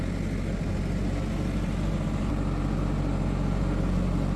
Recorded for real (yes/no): yes